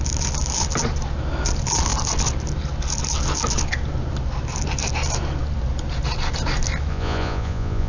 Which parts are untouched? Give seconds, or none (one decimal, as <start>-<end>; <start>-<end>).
0.0-6.9